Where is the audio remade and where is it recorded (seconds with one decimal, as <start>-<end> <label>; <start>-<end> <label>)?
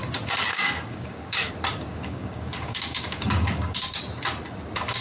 0.0-0.5 recorded; 0.5-1.5 remade; 1.5-1.9 recorded; 1.9-4.0 remade; 4.0-5.0 recorded